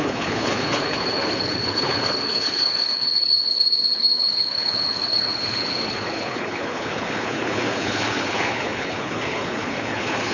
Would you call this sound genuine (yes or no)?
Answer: no